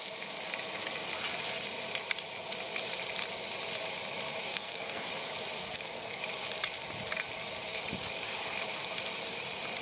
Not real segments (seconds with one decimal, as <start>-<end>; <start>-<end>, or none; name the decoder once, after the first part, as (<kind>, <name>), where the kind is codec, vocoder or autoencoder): 4.5-5.1 (codec, SNAC); 5.6-6.2